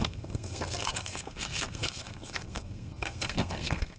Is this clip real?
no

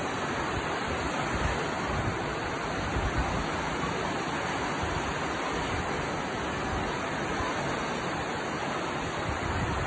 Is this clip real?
yes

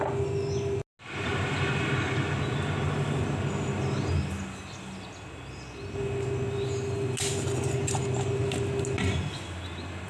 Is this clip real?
yes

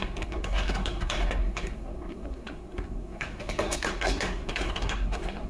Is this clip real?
no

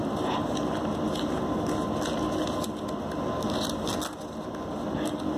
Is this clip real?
yes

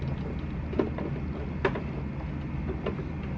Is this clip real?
yes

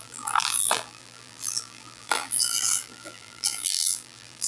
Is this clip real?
no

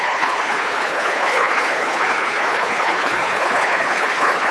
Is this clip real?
no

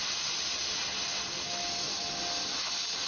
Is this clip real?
yes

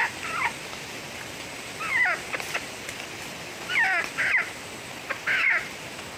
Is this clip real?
yes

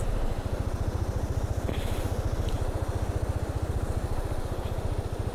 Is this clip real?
yes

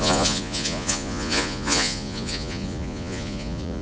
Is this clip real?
no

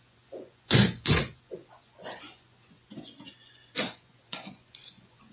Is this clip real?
no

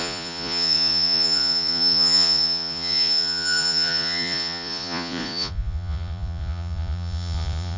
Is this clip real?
no